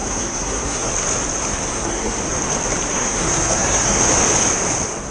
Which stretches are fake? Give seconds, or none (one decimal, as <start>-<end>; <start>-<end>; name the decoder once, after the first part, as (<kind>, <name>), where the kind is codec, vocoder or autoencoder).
0.0-0.9 (codec, SNAC); 1.7-2.2; 2.9-4.0